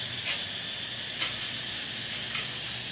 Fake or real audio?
real